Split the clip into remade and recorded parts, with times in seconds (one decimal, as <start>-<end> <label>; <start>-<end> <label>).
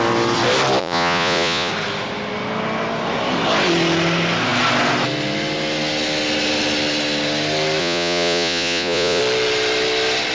0.0-0.8 recorded; 0.8-1.7 remade; 1.7-7.8 recorded; 7.8-9.2 remade; 9.2-10.3 recorded